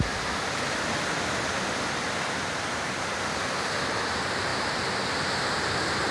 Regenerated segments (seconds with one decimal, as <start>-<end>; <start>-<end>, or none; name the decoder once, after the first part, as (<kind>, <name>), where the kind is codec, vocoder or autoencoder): none